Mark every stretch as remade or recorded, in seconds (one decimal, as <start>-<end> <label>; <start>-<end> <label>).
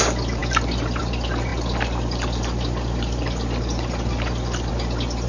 0.0-5.3 recorded